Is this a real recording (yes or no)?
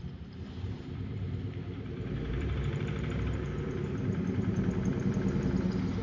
no